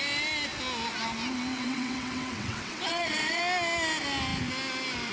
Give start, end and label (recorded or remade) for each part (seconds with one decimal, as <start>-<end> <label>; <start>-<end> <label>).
0.0-1.5 recorded; 1.5-3.4 remade; 3.4-5.1 recorded